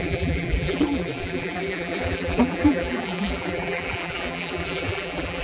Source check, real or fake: fake